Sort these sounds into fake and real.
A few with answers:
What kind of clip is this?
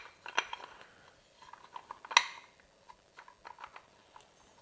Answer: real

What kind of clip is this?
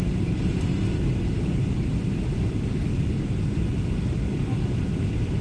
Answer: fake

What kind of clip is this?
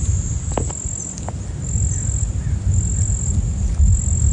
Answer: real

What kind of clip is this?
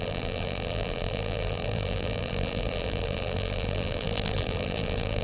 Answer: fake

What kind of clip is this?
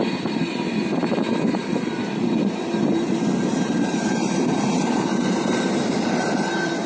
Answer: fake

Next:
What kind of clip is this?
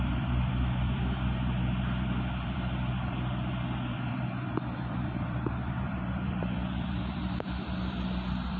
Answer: fake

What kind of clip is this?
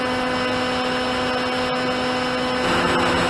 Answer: real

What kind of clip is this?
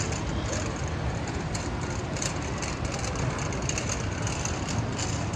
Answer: fake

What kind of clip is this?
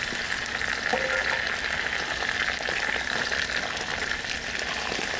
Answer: real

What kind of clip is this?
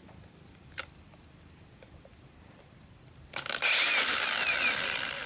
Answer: fake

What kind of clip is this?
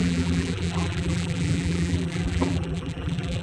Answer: fake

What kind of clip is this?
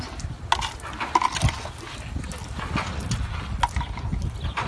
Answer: real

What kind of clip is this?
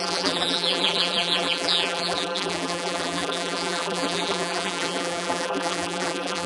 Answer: fake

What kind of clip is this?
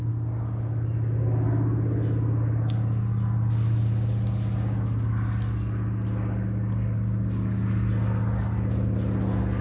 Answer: real